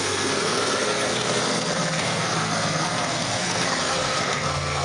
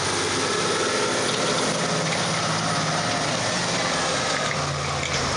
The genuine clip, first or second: second